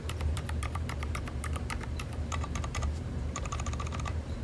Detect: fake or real fake